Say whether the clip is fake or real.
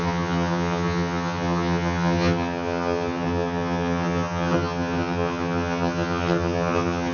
fake